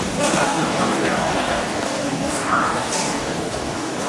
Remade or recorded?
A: remade